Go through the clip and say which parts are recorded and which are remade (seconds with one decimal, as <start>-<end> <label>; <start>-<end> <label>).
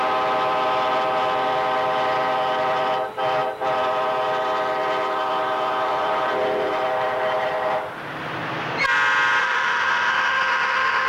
0.0-9.4 recorded; 9.4-11.1 remade